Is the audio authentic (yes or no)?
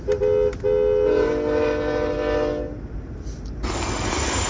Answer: yes